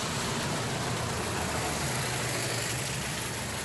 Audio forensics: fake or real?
real